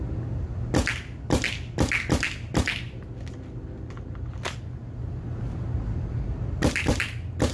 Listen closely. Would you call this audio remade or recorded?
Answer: recorded